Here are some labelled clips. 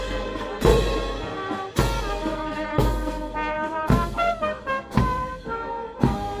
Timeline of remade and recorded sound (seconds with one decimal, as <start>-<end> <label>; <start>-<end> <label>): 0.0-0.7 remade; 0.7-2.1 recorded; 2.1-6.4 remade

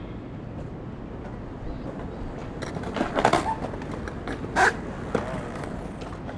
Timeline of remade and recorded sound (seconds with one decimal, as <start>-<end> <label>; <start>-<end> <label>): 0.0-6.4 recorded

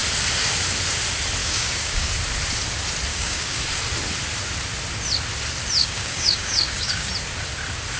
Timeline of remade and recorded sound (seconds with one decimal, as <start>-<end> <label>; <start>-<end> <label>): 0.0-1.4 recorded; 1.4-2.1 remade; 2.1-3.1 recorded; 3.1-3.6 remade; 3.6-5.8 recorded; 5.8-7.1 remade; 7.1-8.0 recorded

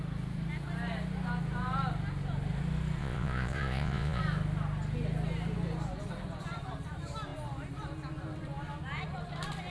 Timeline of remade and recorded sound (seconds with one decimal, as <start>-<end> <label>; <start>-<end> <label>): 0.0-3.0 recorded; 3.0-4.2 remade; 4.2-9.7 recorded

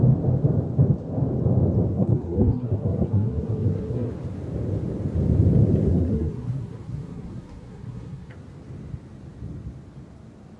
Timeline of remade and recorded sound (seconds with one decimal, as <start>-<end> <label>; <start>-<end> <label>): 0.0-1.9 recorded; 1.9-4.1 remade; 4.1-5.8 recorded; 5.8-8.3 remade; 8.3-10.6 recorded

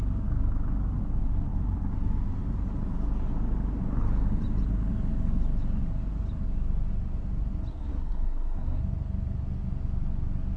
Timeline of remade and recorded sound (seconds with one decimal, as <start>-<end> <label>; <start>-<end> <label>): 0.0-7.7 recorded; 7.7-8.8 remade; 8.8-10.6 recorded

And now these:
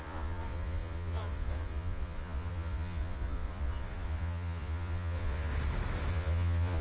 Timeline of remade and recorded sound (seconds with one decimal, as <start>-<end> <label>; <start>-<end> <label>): 0.0-5.5 remade; 5.5-6.1 recorded; 6.1-6.8 remade